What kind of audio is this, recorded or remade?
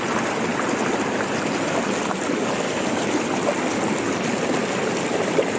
recorded